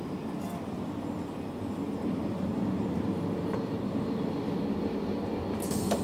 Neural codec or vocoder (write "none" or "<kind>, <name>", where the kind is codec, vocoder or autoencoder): none